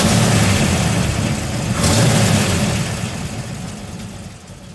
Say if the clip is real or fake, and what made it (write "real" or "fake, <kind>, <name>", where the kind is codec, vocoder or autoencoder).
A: real